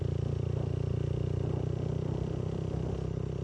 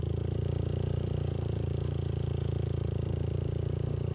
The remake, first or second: second